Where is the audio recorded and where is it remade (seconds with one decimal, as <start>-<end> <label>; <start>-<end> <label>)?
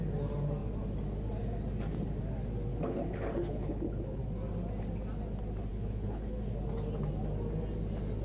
0.0-2.7 recorded; 2.7-4.2 remade; 4.2-5.7 recorded; 5.7-6.4 remade; 6.4-8.2 recorded